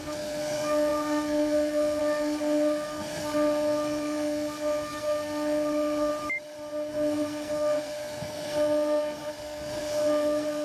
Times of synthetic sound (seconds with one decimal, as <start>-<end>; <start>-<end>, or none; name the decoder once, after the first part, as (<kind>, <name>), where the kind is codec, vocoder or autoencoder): 0.0-6.1 (codec, SNAC); 6.9-10.6

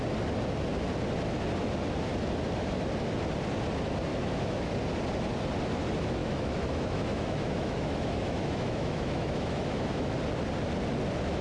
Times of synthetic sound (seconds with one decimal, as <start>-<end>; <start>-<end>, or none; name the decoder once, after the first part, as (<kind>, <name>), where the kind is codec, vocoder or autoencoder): 4.1-4.7 (autoencoder, DAC-VAE); 6.2-10.2

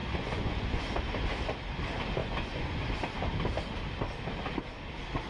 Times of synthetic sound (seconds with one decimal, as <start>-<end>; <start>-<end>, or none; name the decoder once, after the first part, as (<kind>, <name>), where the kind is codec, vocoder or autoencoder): 0.0-0.8 (vocoder, Vocos); 2.2-2.8

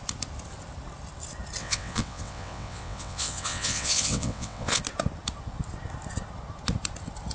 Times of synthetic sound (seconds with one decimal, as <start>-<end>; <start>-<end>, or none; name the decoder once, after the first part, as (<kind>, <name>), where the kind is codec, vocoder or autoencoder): 1.6-4.8 (vocoder, WaveNeXt)

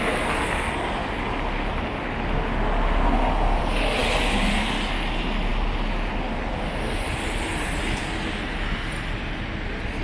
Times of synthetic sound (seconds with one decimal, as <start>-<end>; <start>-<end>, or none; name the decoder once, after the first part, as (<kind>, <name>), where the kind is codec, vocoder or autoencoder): none

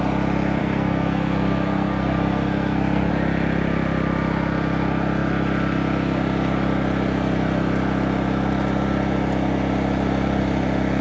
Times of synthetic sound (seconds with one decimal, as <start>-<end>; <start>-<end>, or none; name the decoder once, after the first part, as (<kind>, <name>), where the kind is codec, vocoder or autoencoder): 0.6-3.1 (codec, SNAC)

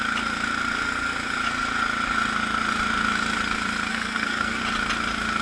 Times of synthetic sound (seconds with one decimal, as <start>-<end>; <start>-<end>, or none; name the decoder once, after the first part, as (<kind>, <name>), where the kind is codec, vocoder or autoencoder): 3.9-4.6 (codec, SNAC)

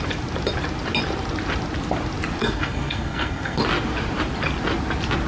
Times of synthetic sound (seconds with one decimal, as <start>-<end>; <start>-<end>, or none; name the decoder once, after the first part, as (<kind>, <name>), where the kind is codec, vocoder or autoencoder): 2.4-3.6 (codec, SNAC)